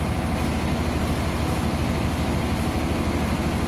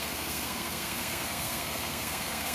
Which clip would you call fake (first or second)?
second